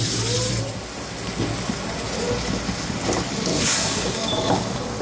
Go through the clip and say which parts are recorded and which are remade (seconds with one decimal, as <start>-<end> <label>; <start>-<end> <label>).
0.0-3.5 recorded; 3.5-5.0 remade